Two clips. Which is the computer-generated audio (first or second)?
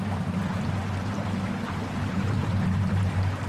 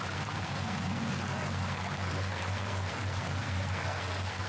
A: second